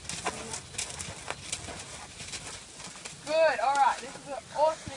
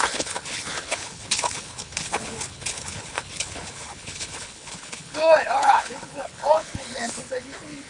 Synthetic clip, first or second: second